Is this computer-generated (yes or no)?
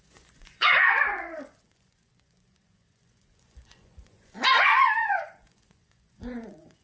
yes